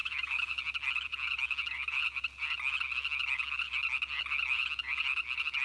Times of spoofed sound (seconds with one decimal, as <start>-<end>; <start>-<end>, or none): 0.0-0.6